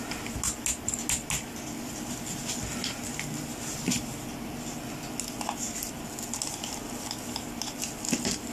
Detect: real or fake real